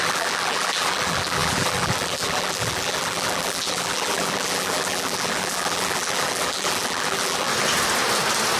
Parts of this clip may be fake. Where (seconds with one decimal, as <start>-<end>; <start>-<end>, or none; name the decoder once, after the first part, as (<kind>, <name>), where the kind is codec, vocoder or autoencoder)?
0.0-7.5 (vocoder, BigVGAN v2)